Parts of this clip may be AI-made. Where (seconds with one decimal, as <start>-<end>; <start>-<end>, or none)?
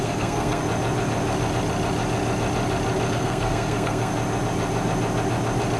0.0-0.6; 3.1-4.1